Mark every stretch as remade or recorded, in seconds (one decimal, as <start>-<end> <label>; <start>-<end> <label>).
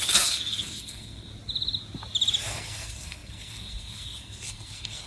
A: 0.0-1.3 remade; 1.3-2.4 recorded; 2.4-5.1 remade